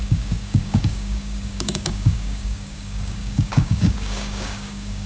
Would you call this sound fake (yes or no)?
yes